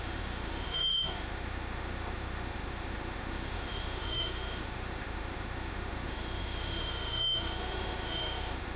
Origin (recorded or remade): remade